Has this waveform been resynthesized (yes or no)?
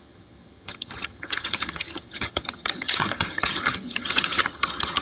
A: yes